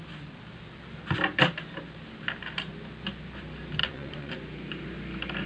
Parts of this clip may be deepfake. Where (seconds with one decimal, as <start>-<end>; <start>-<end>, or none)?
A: 3.8-4.3